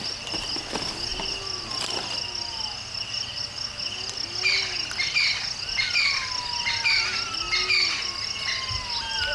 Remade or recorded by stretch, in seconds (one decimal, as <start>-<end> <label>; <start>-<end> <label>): 0.0-9.3 recorded

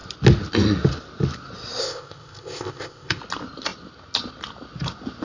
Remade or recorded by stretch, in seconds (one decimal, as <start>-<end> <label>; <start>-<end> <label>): 0.0-1.8 recorded; 1.8-3.2 remade; 3.2-5.2 recorded